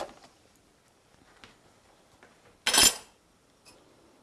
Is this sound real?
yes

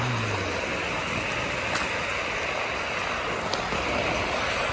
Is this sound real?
yes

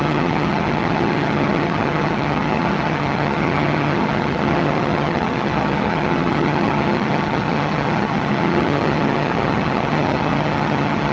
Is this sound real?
no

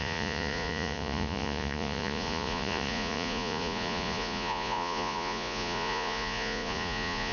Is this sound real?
no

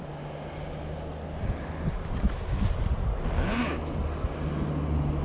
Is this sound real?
yes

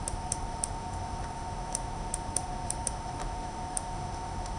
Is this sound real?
no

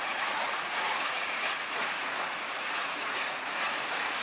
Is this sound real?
no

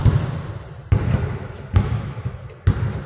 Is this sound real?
yes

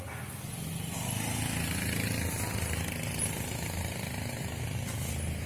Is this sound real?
yes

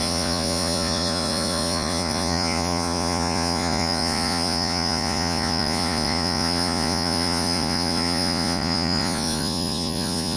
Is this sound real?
no